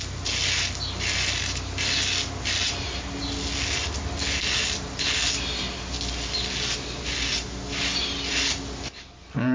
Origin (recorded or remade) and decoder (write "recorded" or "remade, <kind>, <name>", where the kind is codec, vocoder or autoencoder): recorded